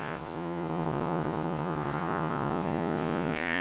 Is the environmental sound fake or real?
fake